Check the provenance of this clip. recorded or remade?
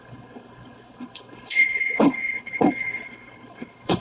remade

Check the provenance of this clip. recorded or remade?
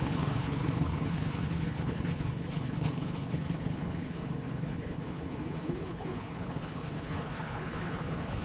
remade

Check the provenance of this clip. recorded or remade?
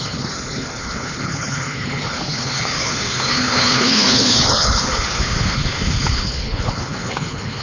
remade